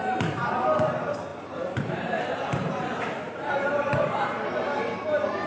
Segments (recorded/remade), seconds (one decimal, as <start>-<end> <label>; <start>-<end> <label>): 0.0-1.3 recorded; 1.3-4.5 remade; 4.5-5.5 recorded